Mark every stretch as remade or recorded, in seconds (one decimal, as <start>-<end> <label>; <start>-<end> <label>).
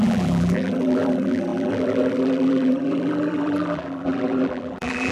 0.0-5.1 remade